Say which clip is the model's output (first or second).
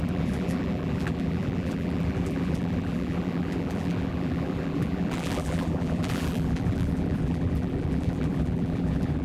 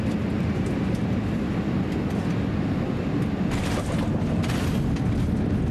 first